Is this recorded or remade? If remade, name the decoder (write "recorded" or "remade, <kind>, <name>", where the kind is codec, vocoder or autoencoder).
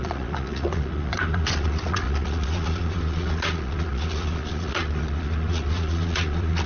remade, vocoder, Vocos